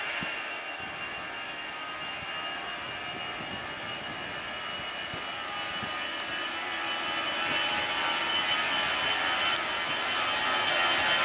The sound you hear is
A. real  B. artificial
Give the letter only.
A